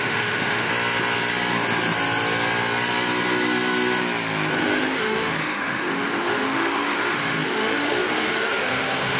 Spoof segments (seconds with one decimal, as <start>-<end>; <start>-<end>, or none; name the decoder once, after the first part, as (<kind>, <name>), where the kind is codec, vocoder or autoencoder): 0.0-0.7 (autoencoder, DAC-VAE); 4.6-9.2

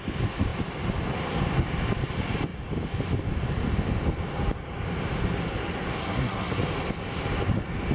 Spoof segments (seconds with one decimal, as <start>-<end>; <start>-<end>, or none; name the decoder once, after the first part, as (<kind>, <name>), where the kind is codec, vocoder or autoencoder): 6.0-6.6 (codec, SNAC)

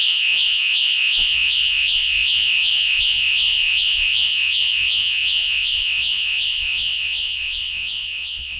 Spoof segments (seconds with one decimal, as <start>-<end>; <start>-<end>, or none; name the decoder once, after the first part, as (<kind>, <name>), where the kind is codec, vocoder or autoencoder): 0.0-8.6 (vocoder, Vocos)